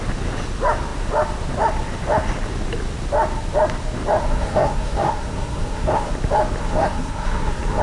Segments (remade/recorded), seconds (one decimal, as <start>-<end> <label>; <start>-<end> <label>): 0.0-4.2 recorded; 4.2-6.1 remade; 6.1-6.6 recorded; 6.6-7.8 remade